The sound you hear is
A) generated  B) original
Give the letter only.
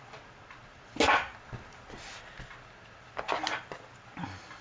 B